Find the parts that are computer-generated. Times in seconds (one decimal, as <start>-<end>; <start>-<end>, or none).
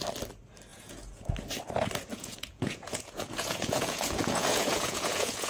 0.7-1.3; 2.1-5.5